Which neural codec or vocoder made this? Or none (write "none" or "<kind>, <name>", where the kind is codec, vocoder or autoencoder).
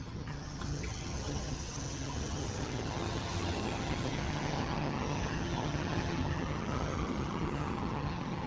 vocoder, HiFi-GAN